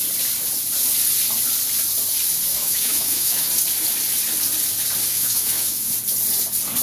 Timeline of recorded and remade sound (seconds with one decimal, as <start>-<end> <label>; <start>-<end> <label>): 0.0-2.5 recorded; 2.5-3.5 remade; 3.5-5.1 recorded; 5.1-5.9 remade; 5.9-6.8 recorded